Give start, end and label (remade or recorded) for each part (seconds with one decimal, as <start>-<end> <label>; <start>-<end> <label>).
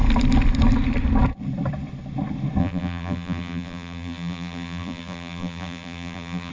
0.0-2.6 recorded; 2.6-6.5 remade